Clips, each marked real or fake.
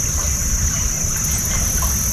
real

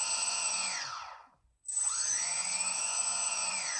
fake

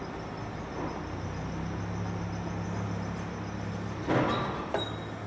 real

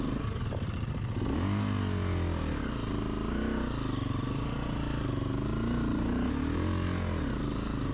real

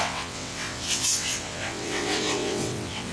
fake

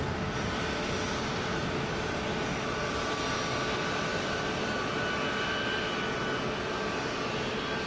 real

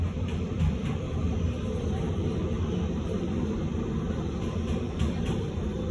fake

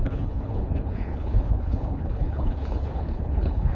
fake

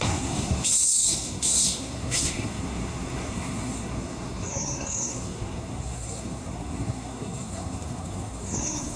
fake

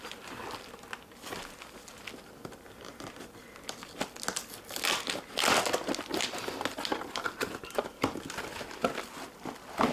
real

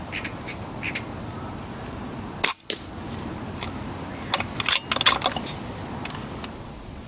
real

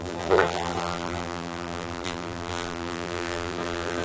fake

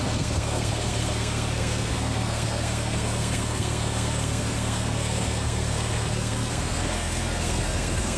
fake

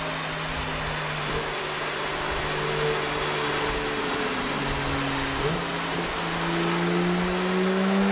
real